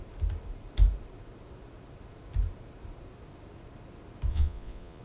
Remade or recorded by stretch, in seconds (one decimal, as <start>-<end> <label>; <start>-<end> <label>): 0.0-4.3 recorded; 4.3-5.0 remade